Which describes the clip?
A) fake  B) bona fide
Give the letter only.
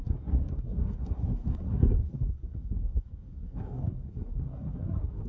A